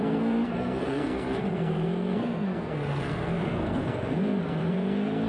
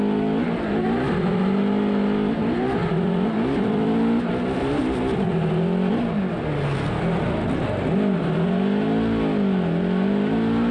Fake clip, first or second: first